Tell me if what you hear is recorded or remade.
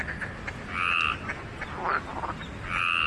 recorded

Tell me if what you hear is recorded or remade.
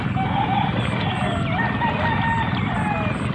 recorded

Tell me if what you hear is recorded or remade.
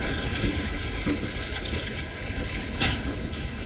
remade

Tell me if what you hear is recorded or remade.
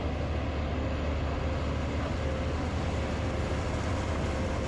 recorded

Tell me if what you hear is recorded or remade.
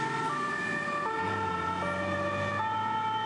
recorded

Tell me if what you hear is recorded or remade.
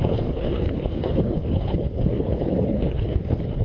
remade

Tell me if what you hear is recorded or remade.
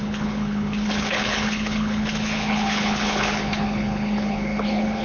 remade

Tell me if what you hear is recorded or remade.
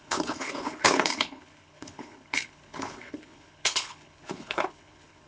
remade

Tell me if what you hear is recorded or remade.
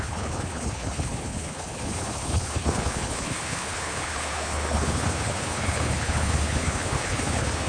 remade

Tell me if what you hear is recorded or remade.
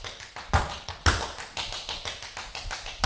recorded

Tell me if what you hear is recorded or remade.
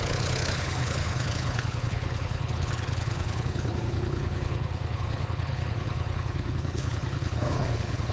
remade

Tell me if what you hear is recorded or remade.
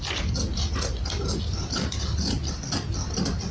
recorded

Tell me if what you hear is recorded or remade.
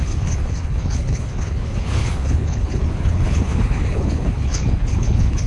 remade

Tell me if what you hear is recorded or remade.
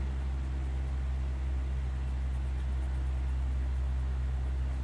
recorded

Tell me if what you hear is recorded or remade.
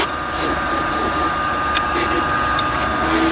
recorded